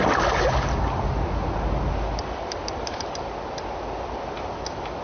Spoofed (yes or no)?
no